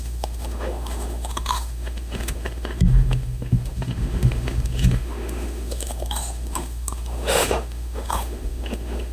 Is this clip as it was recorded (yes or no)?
no